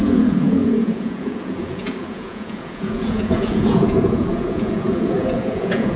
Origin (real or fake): fake